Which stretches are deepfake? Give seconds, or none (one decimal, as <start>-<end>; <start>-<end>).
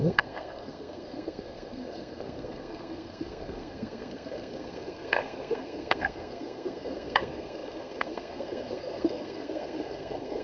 0.0-10.4